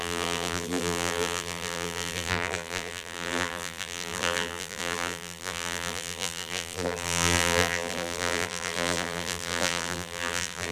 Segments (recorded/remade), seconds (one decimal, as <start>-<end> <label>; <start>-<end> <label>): 0.0-10.7 remade